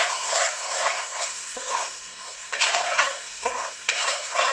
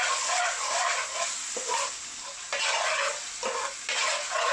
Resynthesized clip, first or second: first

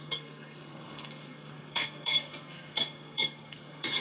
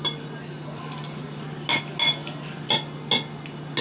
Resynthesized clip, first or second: first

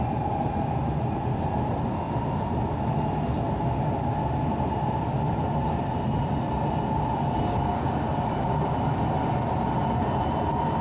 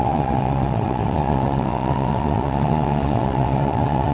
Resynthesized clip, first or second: second